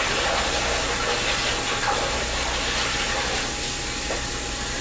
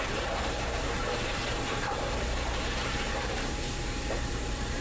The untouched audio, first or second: first